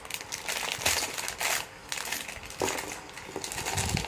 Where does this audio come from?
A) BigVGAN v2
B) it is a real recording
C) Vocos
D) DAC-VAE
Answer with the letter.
B